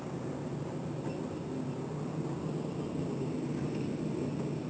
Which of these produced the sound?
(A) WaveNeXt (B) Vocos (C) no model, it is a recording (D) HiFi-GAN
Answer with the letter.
C